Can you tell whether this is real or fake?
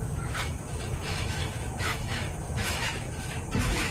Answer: fake